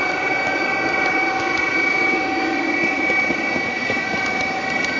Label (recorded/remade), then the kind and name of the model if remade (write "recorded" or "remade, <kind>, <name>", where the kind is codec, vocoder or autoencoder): recorded